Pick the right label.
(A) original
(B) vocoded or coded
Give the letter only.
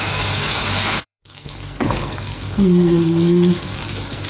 B